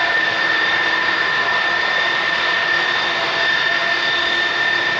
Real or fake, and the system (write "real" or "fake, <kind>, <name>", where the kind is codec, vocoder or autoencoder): real